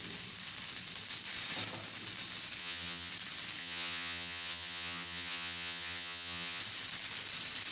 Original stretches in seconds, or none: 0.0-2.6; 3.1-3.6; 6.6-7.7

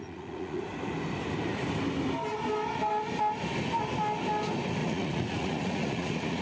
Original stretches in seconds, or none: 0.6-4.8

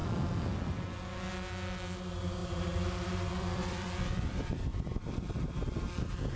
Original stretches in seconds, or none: 0.0-2.4; 5.1-6.4

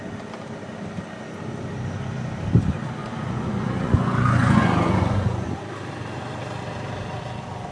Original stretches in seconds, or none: 0.0-3.0; 5.6-7.7